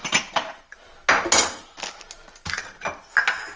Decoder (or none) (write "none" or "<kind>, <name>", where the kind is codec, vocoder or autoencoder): none